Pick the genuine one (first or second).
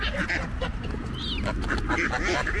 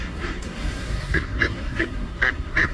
first